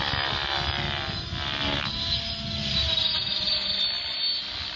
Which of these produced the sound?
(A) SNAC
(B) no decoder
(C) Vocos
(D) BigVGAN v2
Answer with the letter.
B